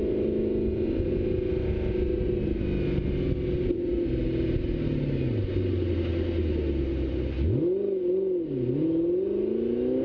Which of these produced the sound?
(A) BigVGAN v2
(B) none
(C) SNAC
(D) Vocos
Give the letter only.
B